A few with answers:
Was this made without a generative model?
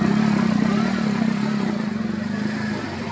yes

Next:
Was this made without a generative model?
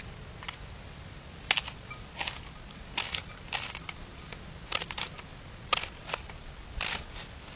yes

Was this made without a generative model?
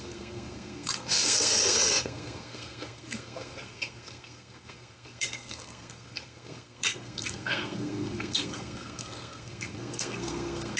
no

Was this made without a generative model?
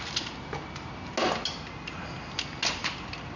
yes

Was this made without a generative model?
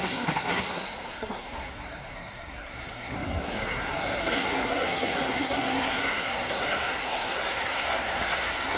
no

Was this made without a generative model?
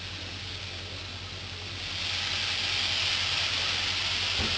yes